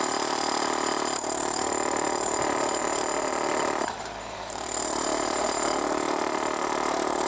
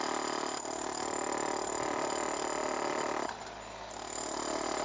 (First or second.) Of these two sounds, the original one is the second